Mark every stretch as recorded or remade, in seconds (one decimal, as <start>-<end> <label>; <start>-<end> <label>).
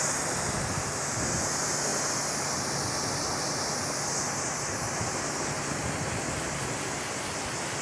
0.0-7.8 recorded